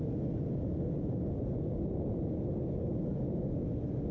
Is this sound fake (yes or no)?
no